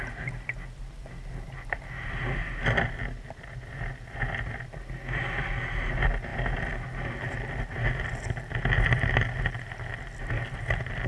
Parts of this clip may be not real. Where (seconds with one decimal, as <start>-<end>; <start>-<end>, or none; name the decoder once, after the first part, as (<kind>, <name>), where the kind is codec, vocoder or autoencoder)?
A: none